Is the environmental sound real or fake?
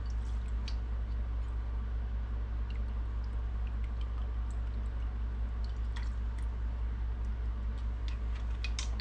real